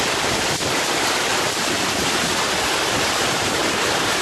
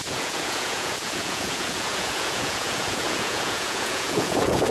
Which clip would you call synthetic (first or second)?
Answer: second